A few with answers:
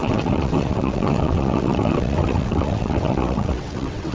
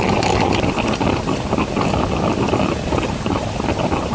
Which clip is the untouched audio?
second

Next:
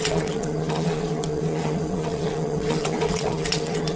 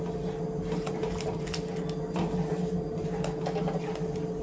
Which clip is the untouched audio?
second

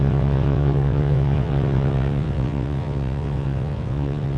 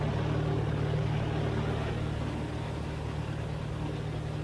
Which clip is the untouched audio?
second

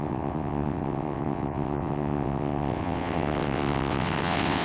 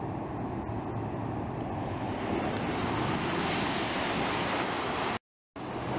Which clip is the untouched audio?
second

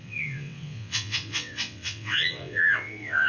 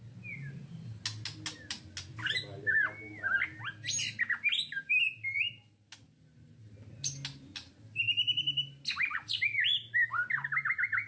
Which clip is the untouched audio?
second